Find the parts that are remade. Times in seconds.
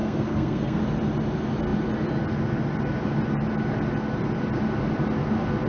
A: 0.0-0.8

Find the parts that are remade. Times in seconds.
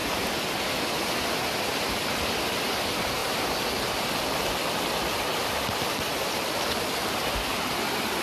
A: 0.0-0.5; 6.1-8.2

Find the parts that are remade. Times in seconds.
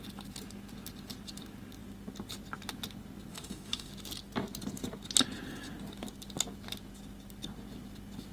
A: 3.3-3.9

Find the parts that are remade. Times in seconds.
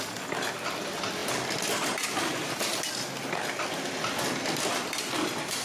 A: none